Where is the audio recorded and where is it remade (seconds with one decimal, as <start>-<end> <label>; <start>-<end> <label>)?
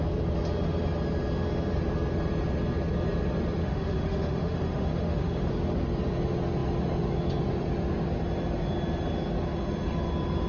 0.0-3.6 recorded; 3.6-5.5 remade; 5.5-10.5 recorded